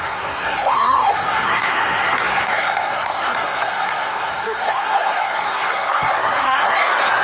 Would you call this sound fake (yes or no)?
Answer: yes